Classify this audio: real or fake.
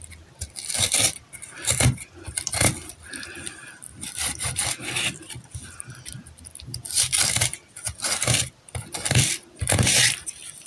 fake